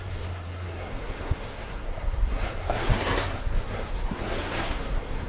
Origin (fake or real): fake